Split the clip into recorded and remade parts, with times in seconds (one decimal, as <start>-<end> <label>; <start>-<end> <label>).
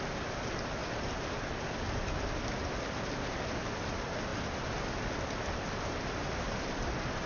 0.0-7.3 recorded